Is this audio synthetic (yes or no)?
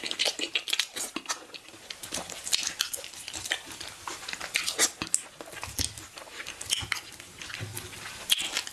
no